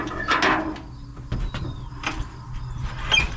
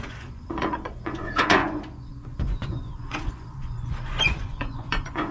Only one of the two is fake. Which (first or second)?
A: second